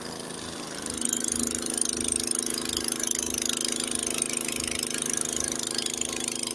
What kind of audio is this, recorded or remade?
recorded